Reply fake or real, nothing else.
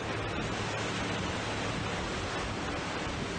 real